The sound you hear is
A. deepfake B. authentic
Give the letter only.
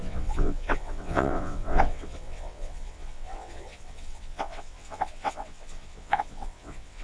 A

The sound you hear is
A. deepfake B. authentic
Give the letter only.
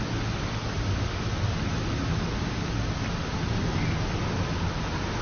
B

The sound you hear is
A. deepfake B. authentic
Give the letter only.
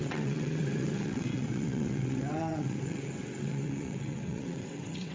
A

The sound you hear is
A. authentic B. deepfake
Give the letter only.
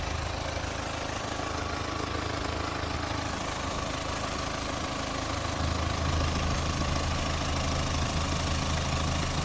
A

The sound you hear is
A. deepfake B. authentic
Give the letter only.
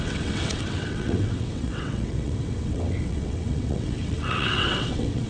A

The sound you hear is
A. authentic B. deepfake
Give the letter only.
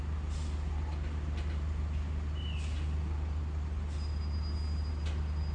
A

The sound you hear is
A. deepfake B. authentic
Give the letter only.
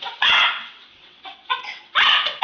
A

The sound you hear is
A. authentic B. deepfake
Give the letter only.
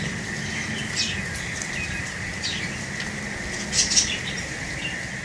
A